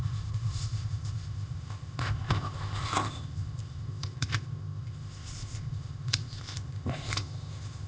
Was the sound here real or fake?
fake